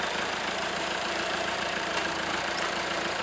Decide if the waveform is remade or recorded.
remade